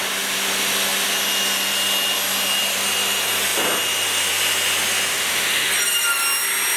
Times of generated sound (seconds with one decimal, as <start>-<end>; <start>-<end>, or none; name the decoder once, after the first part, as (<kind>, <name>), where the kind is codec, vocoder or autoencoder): 5.1-5.7 (autoencoder, DAC-VAE)